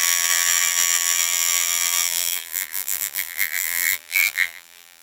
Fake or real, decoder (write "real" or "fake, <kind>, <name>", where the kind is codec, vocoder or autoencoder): fake, vocoder, BigVGAN v2